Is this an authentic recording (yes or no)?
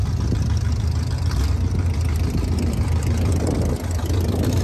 yes